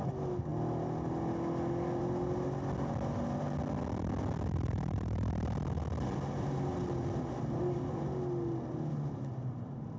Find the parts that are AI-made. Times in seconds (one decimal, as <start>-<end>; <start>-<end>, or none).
none